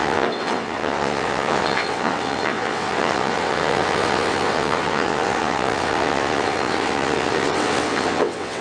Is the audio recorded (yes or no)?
no